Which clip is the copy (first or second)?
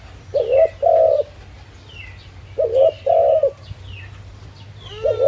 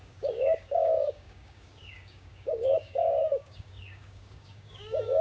second